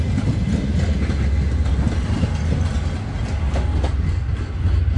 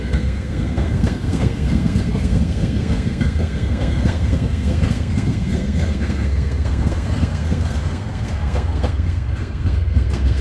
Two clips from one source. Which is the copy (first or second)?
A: second